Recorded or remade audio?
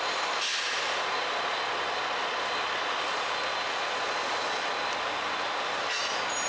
recorded